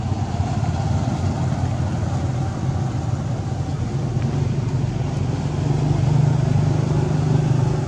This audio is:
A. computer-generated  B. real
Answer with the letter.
B